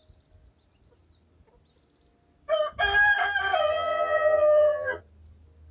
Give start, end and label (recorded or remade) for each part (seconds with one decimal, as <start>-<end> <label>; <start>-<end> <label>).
0.0-3.6 recorded; 3.6-5.0 remade; 5.0-5.7 recorded